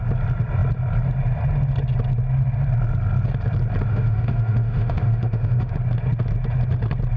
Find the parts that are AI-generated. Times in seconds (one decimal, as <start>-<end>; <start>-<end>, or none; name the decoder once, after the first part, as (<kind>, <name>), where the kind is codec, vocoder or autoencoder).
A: 3.9-5.7 (autoencoder, DAC-VAE)